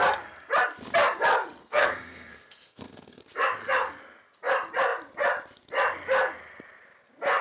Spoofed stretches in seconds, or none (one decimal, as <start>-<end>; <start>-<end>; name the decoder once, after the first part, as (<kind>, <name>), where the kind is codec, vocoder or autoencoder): 1.6-3.2 (codec, SNAC)